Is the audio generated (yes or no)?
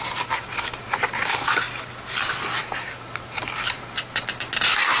no